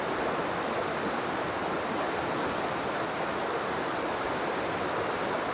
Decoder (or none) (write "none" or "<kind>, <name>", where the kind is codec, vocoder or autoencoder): none